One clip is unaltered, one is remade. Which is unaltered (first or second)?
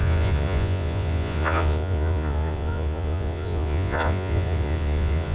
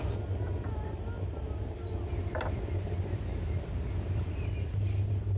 second